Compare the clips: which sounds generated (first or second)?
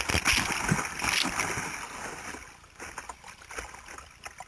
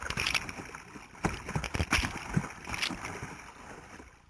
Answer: second